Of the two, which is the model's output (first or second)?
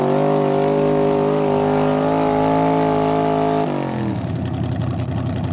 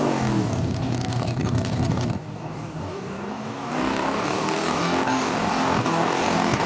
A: second